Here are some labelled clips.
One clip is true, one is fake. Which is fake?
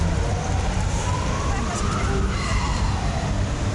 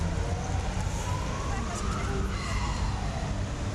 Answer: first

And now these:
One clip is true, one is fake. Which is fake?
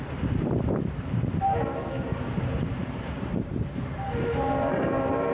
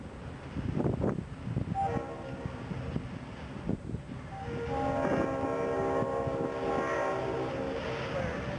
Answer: first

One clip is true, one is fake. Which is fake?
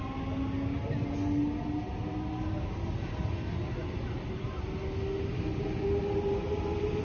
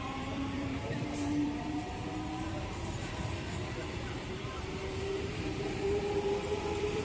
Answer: second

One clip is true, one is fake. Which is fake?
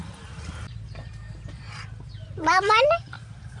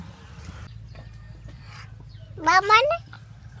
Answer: first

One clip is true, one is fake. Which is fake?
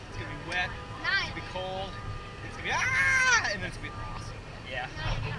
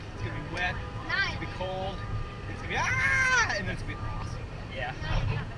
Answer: second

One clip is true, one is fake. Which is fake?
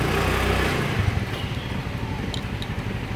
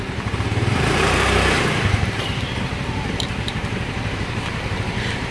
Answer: second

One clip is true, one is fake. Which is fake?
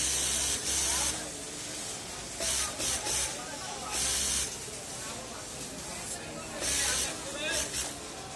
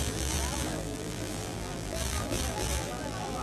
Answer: second